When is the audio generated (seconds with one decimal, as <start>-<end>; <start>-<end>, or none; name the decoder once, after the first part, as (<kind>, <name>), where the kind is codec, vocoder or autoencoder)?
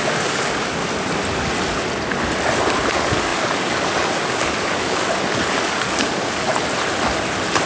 0.0-0.8 (codec, DAC); 2.9-6.5